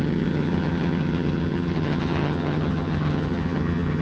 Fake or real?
fake